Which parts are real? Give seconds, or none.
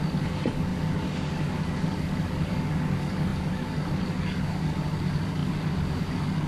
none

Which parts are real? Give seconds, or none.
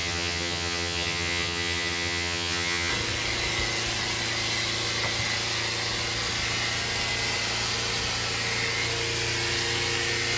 2.9-10.4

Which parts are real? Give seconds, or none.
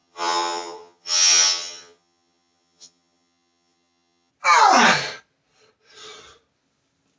4.3-7.2